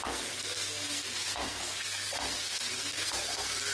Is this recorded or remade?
remade